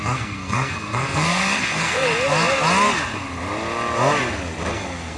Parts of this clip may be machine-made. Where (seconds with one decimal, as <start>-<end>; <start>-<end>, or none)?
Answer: 0.0-2.1; 4.7-5.2